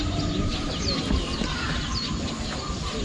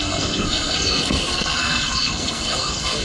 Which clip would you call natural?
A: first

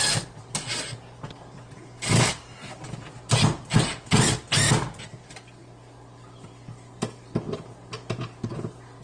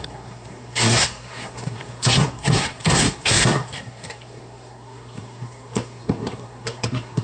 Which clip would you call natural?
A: first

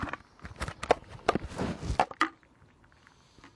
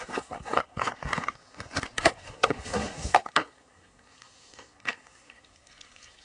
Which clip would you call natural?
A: first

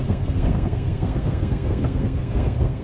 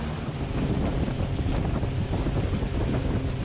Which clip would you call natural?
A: second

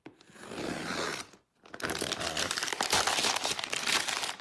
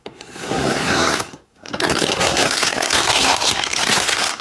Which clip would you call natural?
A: first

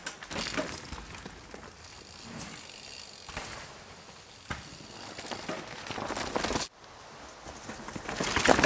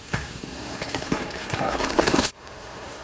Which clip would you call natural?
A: first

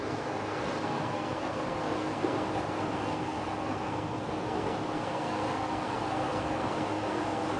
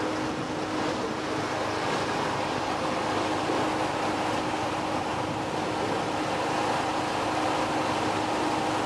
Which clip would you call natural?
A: second